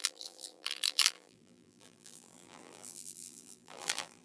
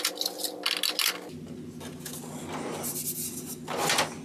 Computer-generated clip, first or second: first